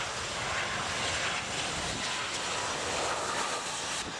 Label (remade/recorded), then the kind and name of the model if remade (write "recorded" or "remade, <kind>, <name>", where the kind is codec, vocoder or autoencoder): recorded